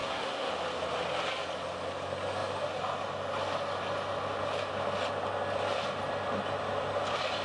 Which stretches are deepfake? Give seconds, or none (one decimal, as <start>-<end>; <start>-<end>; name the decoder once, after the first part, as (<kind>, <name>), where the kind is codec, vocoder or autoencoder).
0.0-0.5 (codec, SNAC)